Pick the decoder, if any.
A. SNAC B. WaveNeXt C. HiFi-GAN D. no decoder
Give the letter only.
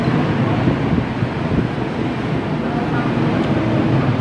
D